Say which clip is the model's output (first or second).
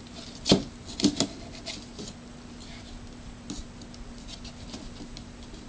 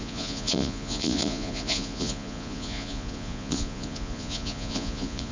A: second